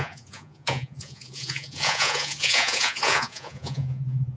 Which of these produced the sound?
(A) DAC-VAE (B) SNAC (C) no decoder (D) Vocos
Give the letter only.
D